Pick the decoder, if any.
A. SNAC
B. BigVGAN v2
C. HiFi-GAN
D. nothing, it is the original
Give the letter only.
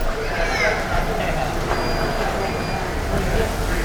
D